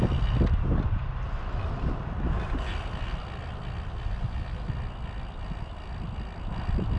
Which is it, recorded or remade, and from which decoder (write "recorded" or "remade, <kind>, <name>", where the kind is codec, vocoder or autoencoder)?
recorded